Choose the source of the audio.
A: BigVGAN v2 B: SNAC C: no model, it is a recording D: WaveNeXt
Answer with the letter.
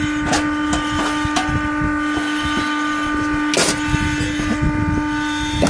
C